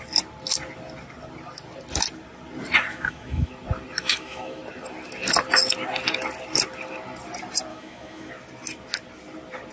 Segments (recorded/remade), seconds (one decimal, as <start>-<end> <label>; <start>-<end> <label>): 0.0-2.9 recorded; 2.9-3.5 remade; 3.5-4.0 recorded; 4.0-4.6 remade; 4.6-7.7 recorded; 7.7-8.3 remade; 8.3-9.7 recorded